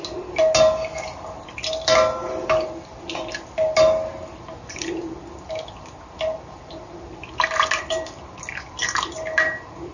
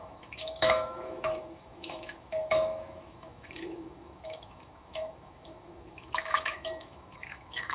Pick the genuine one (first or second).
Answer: first